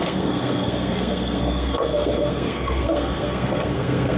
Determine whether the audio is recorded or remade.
remade